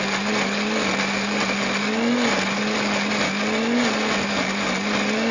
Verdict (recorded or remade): recorded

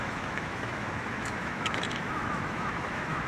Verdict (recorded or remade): remade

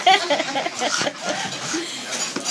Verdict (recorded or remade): recorded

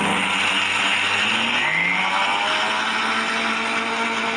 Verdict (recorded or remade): recorded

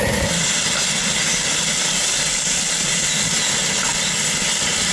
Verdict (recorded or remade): recorded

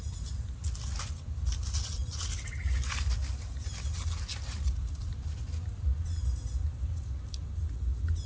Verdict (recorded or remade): recorded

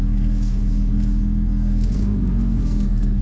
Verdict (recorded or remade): remade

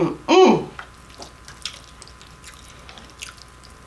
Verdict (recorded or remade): recorded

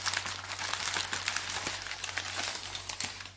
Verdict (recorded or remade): recorded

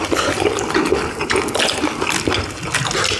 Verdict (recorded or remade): recorded